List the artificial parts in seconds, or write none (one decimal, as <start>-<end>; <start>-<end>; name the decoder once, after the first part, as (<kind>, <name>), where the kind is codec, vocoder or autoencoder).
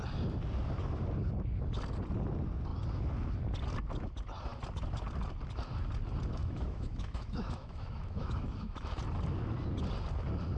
6.4-9.0 (autoencoder, DAC-VAE)